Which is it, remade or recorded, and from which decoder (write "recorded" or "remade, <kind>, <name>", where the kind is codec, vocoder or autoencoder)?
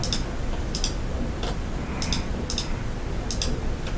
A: recorded